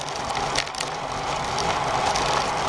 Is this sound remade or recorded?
recorded